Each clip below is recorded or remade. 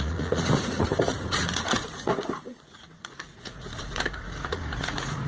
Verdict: remade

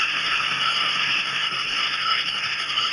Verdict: remade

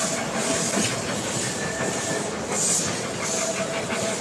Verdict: recorded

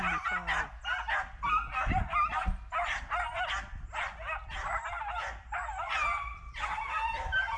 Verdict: recorded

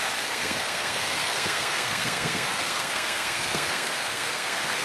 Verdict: remade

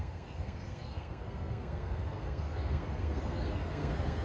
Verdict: remade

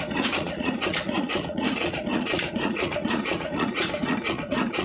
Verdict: remade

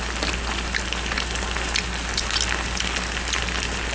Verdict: recorded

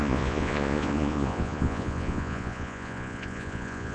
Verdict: remade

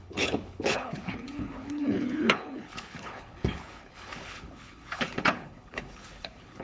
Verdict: remade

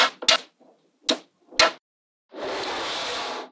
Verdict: recorded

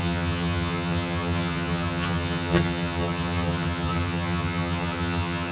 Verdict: remade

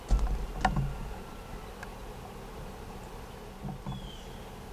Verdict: recorded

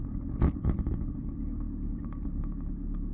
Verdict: recorded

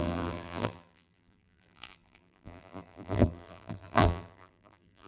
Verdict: remade